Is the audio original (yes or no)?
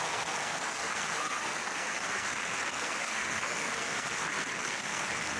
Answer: no